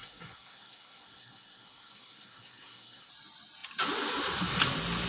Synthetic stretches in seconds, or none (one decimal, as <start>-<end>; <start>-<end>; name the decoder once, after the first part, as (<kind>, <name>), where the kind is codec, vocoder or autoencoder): 0.0-3.1 (codec, SNAC)